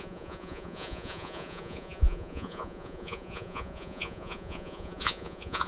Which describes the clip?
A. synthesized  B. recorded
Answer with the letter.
A